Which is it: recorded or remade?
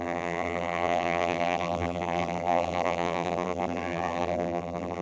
remade